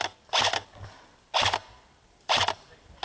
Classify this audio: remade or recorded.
recorded